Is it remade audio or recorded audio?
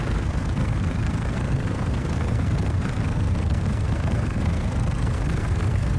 remade